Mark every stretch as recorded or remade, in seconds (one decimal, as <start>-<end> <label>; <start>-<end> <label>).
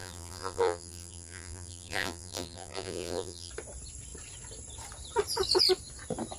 0.0-3.5 remade; 3.5-6.4 recorded